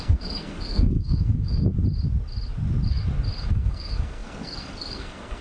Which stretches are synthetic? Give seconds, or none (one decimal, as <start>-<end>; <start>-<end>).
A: 0.0-1.7; 3.5-5.4